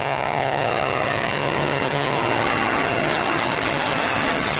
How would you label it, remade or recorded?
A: remade